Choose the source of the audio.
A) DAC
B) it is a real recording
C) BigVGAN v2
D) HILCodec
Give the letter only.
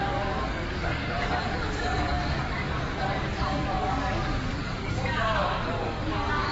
A